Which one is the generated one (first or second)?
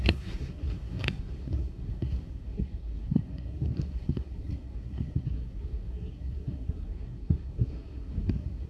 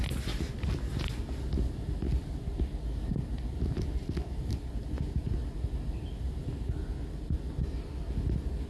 first